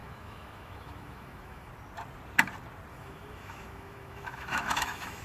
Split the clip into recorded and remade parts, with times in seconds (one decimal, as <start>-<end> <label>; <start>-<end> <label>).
0.0-1.7 remade; 1.7-2.9 recorded; 2.9-5.2 remade